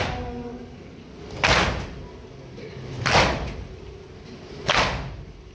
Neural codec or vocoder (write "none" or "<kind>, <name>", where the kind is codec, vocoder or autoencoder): none